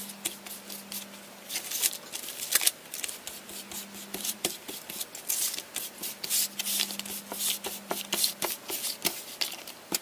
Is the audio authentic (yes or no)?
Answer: yes